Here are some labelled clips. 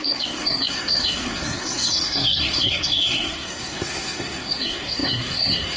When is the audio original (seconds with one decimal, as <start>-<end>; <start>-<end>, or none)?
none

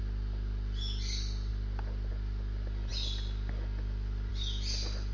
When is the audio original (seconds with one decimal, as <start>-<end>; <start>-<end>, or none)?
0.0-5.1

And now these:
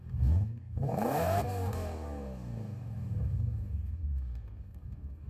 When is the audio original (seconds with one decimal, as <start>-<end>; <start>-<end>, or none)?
none

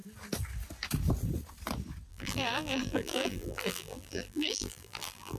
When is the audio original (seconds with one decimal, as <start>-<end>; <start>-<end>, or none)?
0.0-2.1

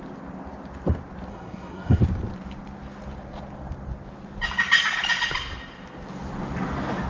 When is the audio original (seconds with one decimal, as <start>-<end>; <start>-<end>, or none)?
0.0-1.3; 2.0-7.1